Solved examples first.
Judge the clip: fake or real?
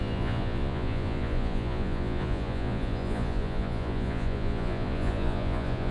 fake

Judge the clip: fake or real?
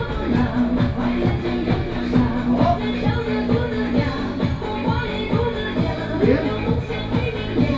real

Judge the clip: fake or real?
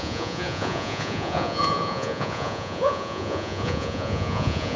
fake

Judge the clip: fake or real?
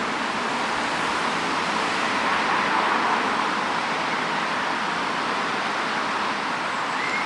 real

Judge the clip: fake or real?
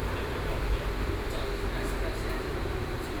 real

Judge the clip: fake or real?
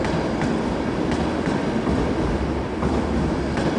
real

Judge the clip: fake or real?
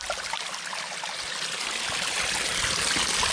real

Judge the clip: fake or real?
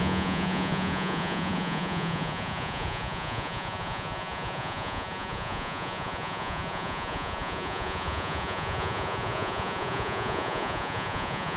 fake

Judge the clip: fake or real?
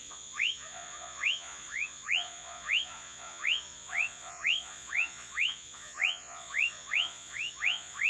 fake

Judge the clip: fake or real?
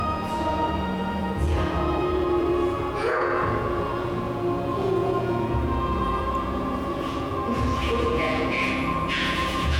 fake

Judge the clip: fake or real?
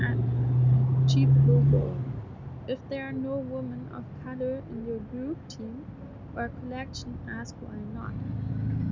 real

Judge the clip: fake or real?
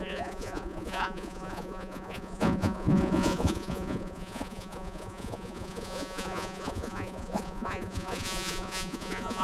fake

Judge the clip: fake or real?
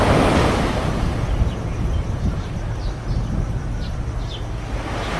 real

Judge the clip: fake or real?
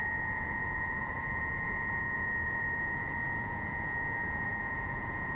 fake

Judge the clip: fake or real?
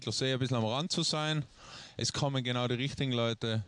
real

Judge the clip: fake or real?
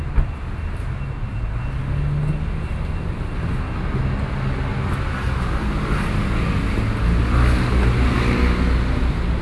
real